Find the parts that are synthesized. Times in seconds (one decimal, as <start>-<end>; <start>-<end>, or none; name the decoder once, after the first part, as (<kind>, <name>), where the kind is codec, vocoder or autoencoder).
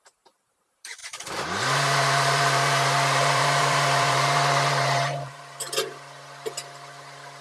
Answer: 1.0-5.4 (vocoder, BigVGAN v2)